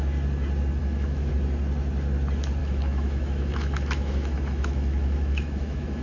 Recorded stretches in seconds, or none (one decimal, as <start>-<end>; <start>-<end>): 0.0-0.8; 1.3-2.6